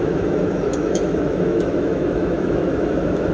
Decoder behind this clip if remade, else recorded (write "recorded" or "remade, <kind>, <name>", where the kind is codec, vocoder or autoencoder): remade, autoencoder, DAC-VAE